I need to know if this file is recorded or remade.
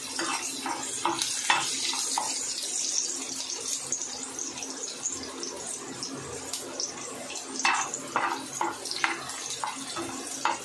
recorded